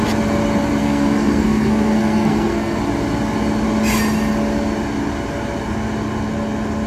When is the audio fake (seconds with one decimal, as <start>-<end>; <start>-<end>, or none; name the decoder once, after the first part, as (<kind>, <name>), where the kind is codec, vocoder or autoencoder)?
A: 0.8-2.8 (codec, SNAC)